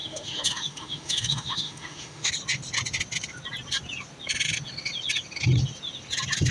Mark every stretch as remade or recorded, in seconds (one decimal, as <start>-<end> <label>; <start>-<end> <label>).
0.0-2.3 remade; 2.3-6.5 recorded